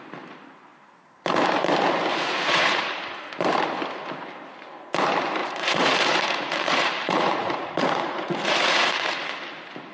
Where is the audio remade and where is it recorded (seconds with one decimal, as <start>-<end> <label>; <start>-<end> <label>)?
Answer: 0.0-2.1 recorded; 2.1-3.0 remade; 3.0-5.4 recorded; 5.4-9.3 remade; 9.3-9.9 recorded